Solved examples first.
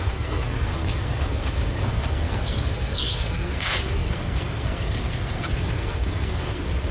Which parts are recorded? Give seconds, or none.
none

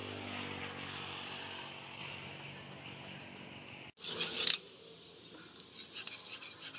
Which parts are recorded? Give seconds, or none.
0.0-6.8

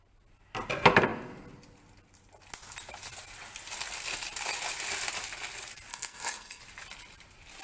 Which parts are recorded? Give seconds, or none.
0.0-5.9; 6.6-7.6

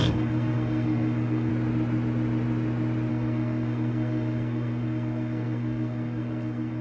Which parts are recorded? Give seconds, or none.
1.5-3.1

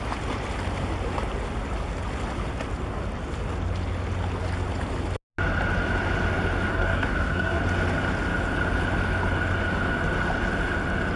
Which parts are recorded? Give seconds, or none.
0.0-6.7; 7.6-11.2